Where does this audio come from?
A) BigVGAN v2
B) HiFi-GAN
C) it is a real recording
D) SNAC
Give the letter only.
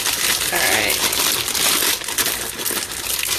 C